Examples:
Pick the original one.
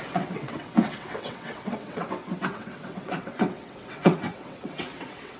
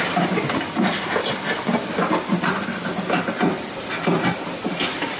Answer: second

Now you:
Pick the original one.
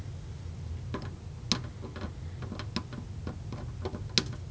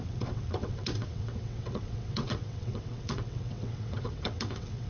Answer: first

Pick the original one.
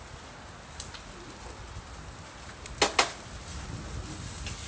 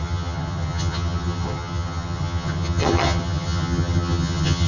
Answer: first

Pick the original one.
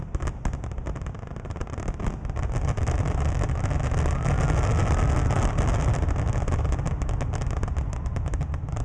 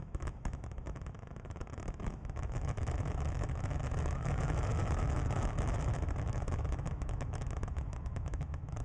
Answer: first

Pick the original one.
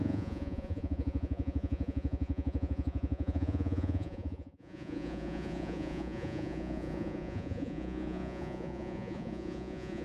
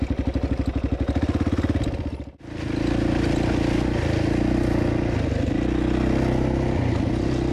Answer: second